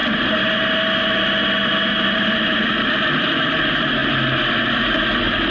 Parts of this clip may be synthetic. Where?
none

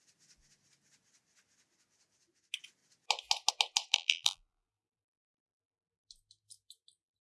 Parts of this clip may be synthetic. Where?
3.9-5.6 (vocoder, BigVGAN v2)

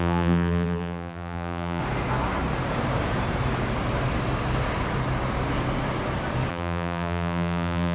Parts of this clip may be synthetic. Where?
0.0-1.8 (vocoder, BigVGAN v2); 6.5-7.9

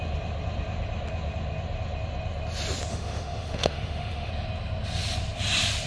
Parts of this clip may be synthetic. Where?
2.9-4.3 (autoencoder, DAC-VAE)